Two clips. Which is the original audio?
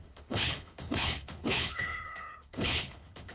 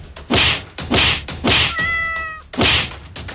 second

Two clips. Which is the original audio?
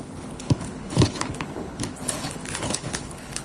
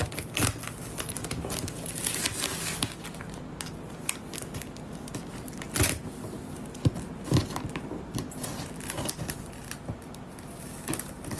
second